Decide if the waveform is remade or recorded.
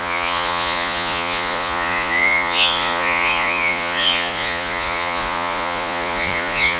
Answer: remade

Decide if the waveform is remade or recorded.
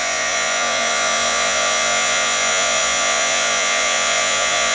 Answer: remade